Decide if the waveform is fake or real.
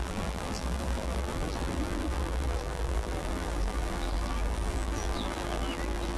fake